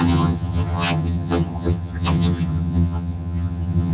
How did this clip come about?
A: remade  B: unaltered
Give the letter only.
A